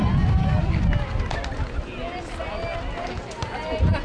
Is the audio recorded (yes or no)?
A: yes